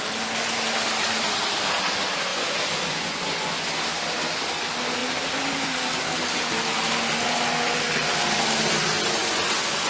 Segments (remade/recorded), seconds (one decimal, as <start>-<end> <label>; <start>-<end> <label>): 0.0-2.3 recorded; 2.3-3.7 remade; 3.7-9.2 recorded; 9.2-9.9 remade